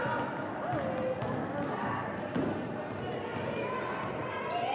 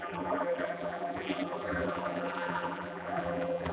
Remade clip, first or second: second